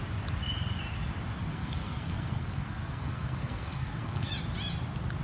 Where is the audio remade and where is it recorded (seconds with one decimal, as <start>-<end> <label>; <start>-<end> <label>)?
0.0-1.5 recorded; 1.5-4.3 remade; 4.3-5.2 recorded